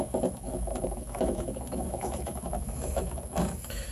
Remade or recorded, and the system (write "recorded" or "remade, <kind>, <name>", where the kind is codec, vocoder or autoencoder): remade, autoencoder, DAC-VAE